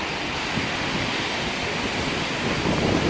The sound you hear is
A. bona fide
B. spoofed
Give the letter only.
A